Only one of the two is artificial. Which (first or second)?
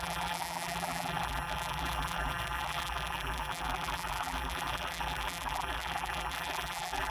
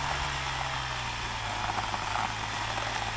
first